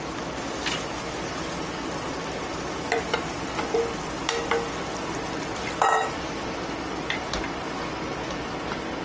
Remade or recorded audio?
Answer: recorded